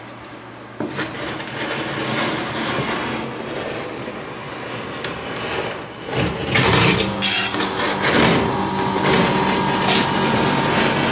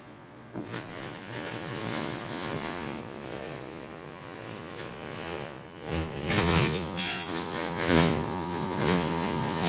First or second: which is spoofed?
second